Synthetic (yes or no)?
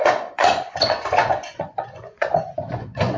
yes